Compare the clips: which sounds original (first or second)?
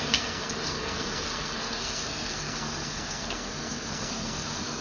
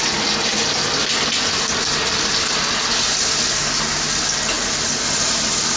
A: second